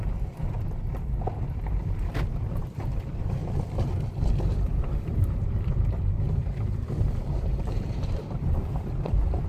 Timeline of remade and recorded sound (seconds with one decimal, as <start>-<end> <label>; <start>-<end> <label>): 0.0-3.4 remade; 3.4-4.8 recorded; 4.8-9.5 remade